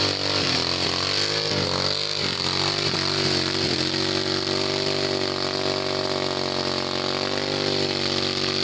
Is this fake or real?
real